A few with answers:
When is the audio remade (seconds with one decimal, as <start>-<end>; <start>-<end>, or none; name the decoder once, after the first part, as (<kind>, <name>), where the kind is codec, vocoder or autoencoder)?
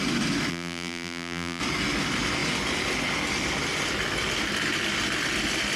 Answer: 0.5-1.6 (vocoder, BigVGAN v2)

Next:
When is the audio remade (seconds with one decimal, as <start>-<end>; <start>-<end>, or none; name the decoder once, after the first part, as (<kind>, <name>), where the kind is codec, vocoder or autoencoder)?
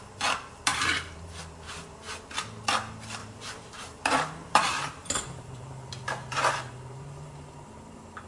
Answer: 0.7-1.4 (vocoder, BigVGAN v2); 3.2-6.5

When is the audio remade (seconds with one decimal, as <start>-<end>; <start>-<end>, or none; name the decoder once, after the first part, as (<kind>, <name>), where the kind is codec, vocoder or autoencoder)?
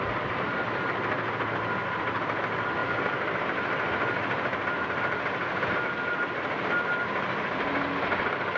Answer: none